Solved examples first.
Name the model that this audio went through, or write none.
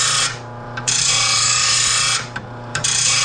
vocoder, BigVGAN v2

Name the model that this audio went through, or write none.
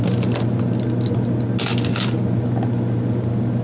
none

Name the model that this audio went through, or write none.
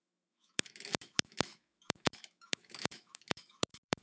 autoencoder, DAC-VAE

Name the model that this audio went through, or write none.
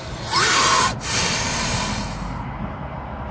none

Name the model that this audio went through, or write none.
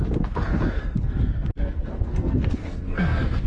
codec, SNAC